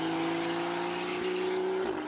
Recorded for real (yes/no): yes